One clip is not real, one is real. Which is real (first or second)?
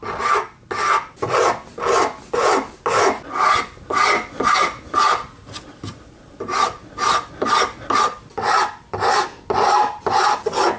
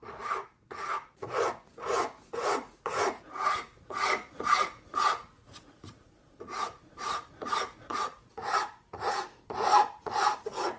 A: first